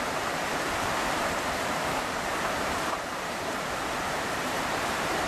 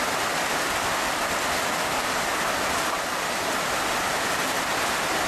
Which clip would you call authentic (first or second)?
second